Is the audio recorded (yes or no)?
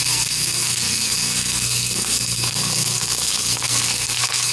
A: no